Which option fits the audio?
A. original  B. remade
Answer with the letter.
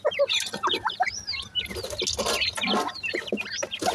A